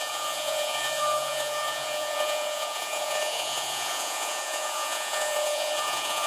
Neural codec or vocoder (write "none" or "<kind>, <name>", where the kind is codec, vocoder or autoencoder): vocoder, Vocos